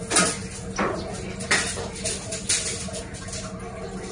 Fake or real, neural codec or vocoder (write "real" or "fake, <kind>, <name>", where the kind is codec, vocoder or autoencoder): real